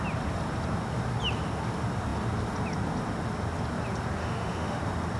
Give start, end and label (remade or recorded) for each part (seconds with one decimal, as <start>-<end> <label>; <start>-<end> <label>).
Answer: 0.0-4.2 recorded; 4.2-4.8 remade; 4.8-5.2 recorded